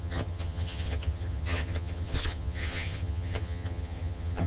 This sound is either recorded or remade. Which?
remade